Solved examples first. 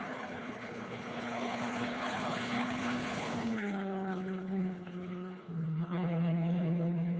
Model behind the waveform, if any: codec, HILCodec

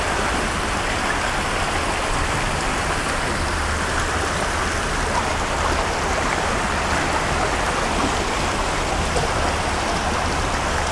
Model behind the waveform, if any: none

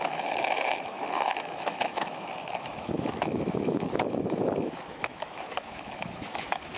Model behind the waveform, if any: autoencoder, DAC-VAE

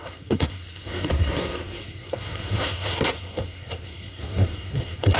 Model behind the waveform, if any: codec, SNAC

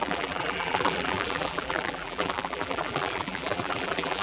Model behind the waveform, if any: vocoder, BigVGAN v2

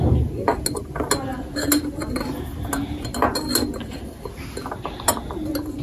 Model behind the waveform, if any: none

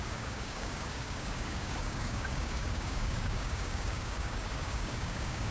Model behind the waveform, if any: codec, DAC